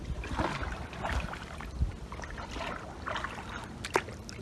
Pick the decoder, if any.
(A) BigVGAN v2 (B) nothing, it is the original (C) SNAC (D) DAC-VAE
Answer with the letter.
B